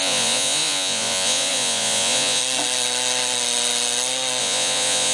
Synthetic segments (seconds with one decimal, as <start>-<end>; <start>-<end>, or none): 0.0-2.4; 4.4-5.1